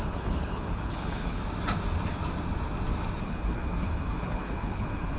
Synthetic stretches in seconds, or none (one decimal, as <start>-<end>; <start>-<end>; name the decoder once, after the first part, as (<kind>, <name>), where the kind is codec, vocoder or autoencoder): 0.0-1.4 (codec, HILCodec); 3.2-5.2